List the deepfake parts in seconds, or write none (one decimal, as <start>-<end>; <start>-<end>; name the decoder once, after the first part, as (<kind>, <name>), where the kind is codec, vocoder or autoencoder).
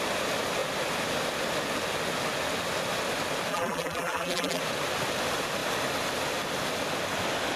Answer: 3.5-4.6 (vocoder, BigVGAN v2)